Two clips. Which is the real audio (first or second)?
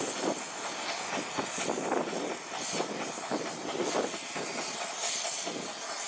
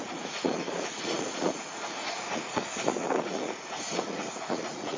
first